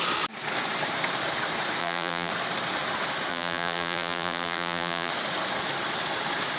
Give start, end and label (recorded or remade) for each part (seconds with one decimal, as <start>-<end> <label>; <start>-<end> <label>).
0.0-1.8 recorded; 1.8-2.3 remade; 2.3-3.3 recorded; 3.3-5.1 remade; 5.1-6.6 recorded